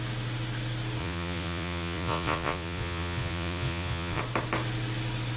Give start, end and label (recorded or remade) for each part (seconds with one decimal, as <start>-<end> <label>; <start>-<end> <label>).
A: 0.0-1.0 recorded; 1.0-4.2 remade; 4.2-5.4 recorded